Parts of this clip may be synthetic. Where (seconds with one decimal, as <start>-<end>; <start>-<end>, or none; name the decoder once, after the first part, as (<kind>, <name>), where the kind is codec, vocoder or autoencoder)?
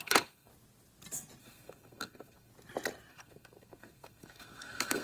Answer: 0.0-0.5 (codec, SNAC); 1.4-2.5; 3.1-5.0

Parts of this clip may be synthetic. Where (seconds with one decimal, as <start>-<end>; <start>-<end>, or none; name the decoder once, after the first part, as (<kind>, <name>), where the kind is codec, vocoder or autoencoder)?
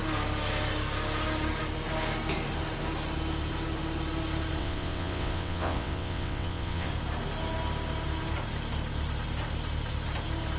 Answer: 4.6-6.9 (vocoder, WaveNeXt)